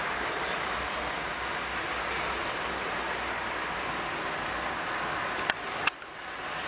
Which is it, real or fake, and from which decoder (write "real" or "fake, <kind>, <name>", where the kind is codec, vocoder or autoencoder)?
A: real